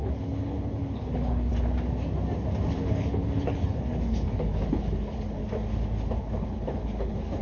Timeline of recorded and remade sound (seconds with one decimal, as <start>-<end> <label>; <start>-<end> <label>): 0.0-1.5 remade; 1.5-2.7 recorded; 2.7-5.4 remade; 5.4-6.2 recorded; 6.2-7.4 remade